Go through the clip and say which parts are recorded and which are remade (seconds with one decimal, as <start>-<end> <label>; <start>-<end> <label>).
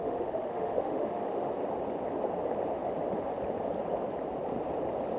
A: 0.0-1.5 remade; 1.5-5.2 recorded